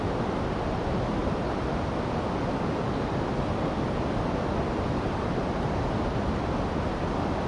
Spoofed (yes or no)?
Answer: no